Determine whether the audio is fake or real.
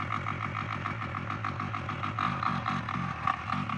real